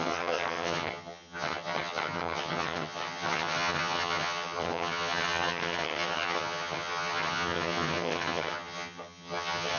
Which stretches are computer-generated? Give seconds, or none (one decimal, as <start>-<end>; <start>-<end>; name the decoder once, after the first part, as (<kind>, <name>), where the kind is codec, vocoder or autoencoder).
0.0-9.8 (vocoder, HiFi-GAN)